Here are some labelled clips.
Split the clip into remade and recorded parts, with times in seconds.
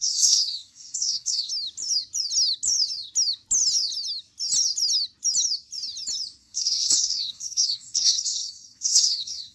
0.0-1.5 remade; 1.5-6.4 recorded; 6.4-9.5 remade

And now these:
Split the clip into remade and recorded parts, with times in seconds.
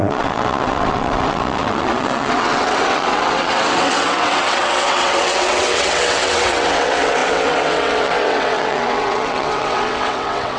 0.0-10.6 remade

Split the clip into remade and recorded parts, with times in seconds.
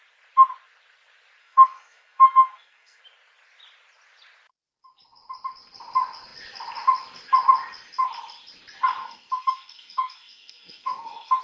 0.0-1.4 recorded; 1.4-3.0 remade; 3.0-9.0 recorded; 9.0-11.4 remade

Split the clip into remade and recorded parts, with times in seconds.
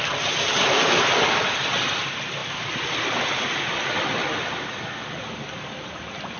0.0-6.4 recorded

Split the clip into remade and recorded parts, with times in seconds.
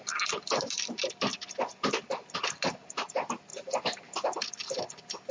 0.0-5.3 recorded